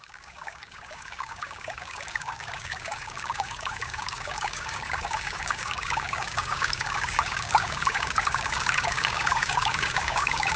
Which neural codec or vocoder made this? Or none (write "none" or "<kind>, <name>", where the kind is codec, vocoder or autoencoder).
codec, DAC